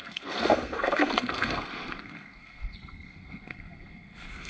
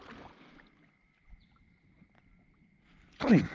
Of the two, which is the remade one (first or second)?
first